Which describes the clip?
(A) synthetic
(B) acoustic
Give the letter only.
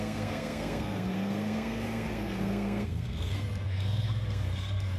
A